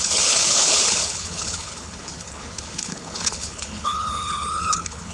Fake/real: fake